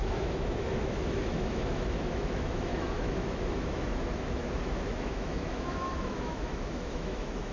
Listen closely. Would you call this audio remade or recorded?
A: remade